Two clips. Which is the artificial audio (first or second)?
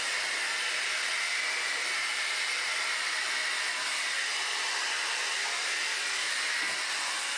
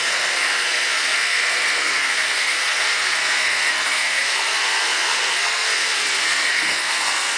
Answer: second